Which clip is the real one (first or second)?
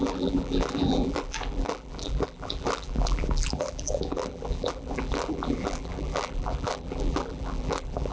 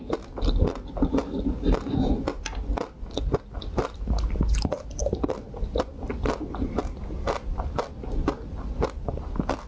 second